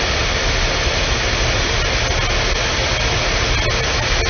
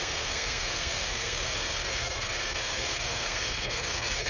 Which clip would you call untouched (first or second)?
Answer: first